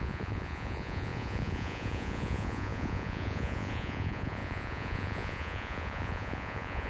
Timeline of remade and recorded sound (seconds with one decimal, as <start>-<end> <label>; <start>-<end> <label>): 0.0-6.9 remade